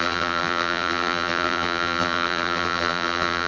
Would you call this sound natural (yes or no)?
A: no